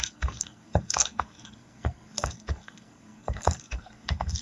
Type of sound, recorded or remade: remade